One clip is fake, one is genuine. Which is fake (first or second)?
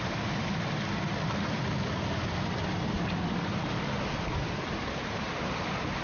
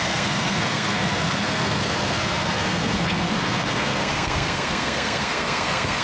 second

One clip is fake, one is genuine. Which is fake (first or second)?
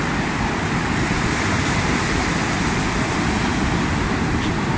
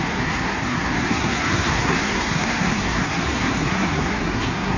second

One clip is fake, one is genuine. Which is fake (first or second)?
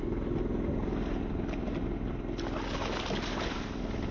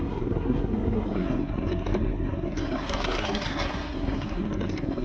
second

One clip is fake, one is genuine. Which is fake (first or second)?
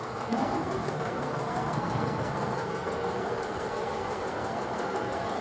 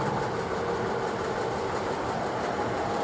first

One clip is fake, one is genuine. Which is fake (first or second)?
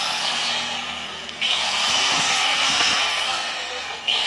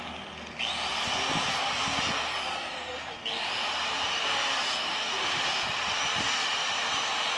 first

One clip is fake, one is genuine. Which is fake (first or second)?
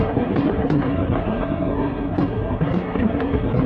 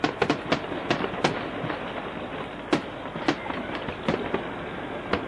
first